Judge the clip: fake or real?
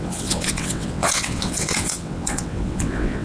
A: fake